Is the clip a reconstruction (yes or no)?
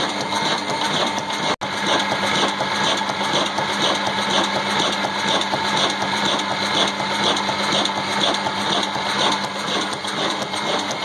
no